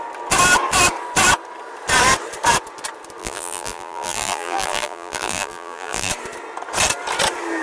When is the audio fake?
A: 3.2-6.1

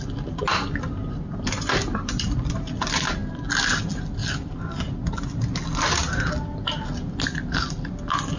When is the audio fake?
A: 1.9-2.5

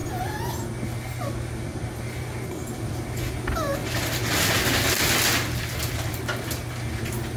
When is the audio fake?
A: 3.8-4.5

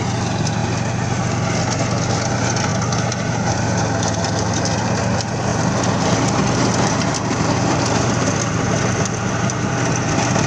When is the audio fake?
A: 5.5-9.7

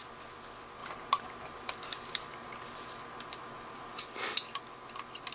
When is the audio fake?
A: 0.8-4.0

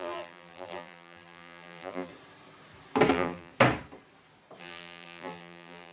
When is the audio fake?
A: 0.0-2.1; 3.1-3.5; 4.6-5.9